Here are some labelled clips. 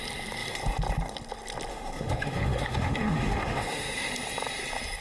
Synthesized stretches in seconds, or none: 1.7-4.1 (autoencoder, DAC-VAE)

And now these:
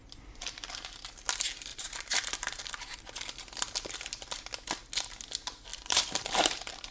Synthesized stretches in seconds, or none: 1.7-3.0 (vocoder, BigVGAN v2); 5.7-6.9

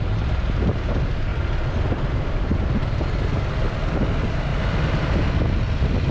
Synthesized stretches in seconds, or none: none

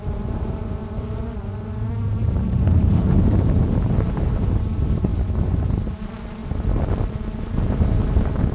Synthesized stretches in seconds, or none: 0.0-6.4 (vocoder, BigVGAN v2); 7.4-8.5

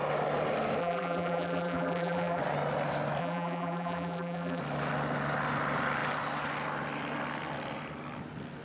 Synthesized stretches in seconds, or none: 0.8-2.4 (vocoder, BigVGAN v2); 3.2-4.6

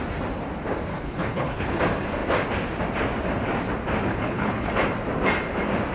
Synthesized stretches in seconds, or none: 0.9-1.8 (codec, HILCodec); 4.1-4.7